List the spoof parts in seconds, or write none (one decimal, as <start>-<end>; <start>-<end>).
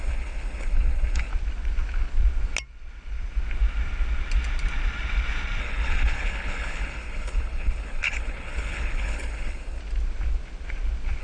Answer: 0.0-1.3; 5.6-9.8